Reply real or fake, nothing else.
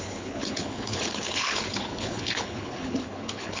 fake